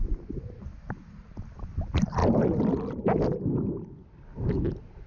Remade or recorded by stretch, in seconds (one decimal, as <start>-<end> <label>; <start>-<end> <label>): 0.0-0.6 recorded; 0.6-1.6 remade; 1.6-2.2 recorded; 2.2-3.7 remade; 3.7-5.1 recorded